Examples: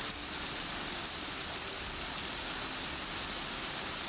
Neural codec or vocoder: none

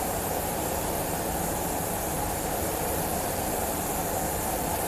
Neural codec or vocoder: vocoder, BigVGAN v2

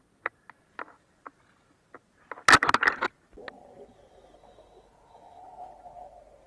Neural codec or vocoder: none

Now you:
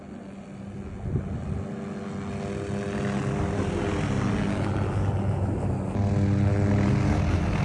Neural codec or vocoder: none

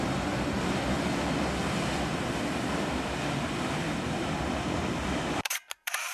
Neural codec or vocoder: vocoder, BigVGAN v2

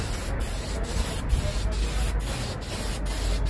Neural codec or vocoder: none